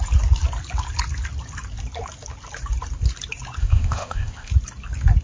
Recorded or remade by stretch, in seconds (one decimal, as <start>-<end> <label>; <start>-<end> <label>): 0.0-3.6 recorded; 3.6-4.5 remade; 4.5-5.2 recorded